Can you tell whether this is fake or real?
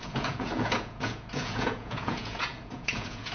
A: fake